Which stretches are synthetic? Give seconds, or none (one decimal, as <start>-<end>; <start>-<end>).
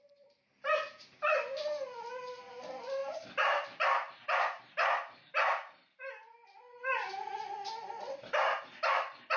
3.0-6.0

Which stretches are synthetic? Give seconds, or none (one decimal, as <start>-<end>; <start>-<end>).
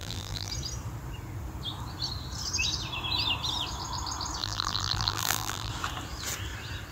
0.0-0.5; 4.4-5.7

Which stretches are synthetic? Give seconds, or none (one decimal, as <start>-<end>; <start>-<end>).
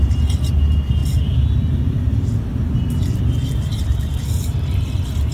none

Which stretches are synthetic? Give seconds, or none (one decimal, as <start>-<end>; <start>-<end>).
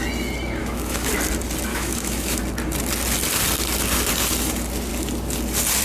0.6-1.1; 1.7-2.4